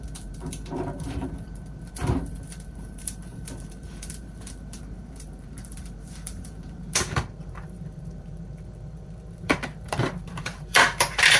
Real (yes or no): no